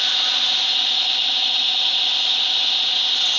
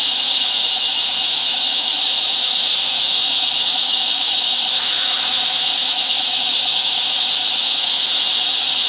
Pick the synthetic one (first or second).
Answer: second